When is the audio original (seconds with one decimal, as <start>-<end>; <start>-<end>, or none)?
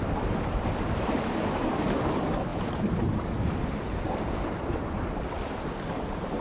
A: 0.0-2.5; 5.0-6.4